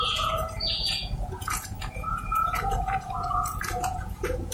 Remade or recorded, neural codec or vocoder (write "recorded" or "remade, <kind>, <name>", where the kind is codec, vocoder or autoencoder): remade, vocoder, Vocos